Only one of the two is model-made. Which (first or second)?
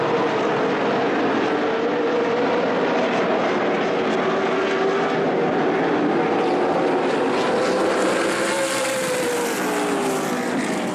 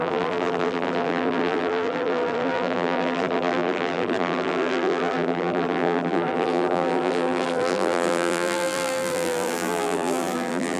second